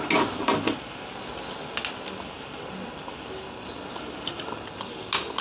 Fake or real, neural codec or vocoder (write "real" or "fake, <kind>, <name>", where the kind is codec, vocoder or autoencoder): real